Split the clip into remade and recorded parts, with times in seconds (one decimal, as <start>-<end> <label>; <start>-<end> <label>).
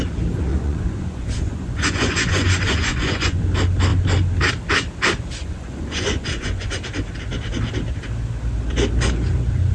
0.0-0.5 recorded; 0.5-3.4 remade; 3.4-5.4 recorded; 5.4-6.8 remade; 6.8-9.7 recorded